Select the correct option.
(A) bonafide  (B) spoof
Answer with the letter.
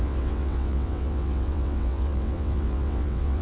B